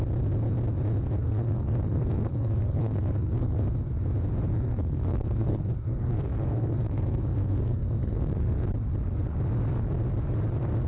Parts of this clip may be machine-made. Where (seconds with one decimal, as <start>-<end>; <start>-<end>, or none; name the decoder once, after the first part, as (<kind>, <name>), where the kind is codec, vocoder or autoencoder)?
1.2-3.6 (codec, SNAC); 4.5-8.7